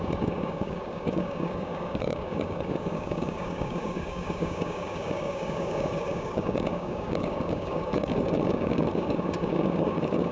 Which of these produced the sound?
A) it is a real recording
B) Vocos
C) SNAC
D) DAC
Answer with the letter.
D